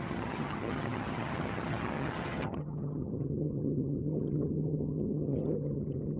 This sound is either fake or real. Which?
fake